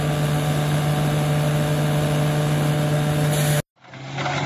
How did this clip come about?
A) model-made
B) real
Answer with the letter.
B